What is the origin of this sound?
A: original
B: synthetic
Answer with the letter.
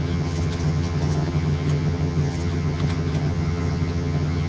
B